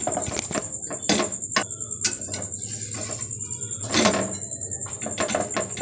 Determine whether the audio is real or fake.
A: real